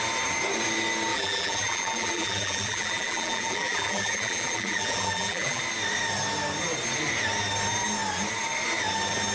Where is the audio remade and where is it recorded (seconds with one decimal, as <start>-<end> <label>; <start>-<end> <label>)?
0.0-1.1 recorded; 1.1-5.6 remade; 5.6-9.3 recorded